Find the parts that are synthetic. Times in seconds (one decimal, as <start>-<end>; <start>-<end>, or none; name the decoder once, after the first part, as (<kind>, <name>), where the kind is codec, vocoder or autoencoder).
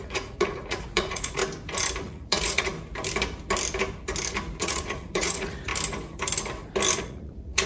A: 0.0-1.4 (vocoder, Vocos); 2.0-2.7; 4.6-5.7; 7.0-7.7